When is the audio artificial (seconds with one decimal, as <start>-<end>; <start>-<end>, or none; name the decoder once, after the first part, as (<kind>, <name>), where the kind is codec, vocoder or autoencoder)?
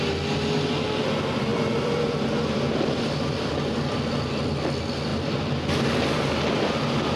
1.5-3.5 (vocoder, BigVGAN v2); 5.1-5.7